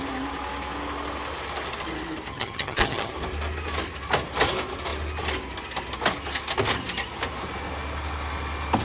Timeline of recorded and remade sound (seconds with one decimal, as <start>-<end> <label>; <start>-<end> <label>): 0.0-2.3 recorded; 2.3-3.1 remade; 3.1-8.8 recorded